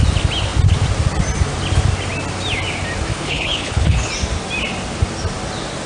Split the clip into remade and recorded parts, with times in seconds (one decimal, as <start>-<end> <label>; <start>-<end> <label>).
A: 0.0-3.1 recorded; 3.1-4.1 remade; 4.1-5.9 recorded